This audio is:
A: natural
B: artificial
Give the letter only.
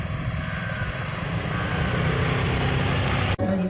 A